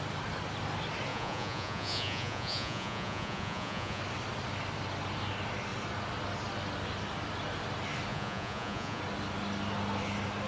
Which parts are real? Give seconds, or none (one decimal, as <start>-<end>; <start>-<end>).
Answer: 0.0-1.1; 4.0-8.1; 9.0-10.5

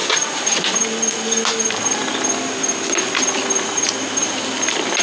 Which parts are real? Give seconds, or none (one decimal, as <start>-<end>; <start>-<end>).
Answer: 0.0-5.0

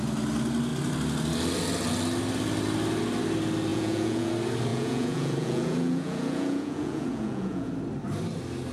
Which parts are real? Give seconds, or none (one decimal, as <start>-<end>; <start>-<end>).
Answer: 0.0-3.7; 4.3-4.7; 7.7-8.7

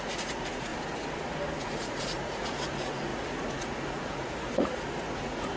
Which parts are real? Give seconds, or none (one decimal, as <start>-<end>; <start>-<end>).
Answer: 0.7-1.6